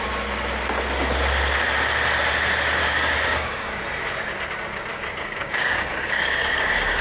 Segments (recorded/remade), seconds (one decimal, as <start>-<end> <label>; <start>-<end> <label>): 0.0-2.8 recorded; 2.8-3.8 remade; 3.8-4.9 recorded; 4.9-7.0 remade